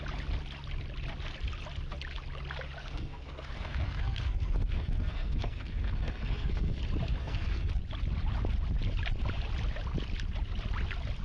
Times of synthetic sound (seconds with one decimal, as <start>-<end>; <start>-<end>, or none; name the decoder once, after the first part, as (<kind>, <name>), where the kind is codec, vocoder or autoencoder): 2.8-6.8 (codec, SNAC); 7.2-7.7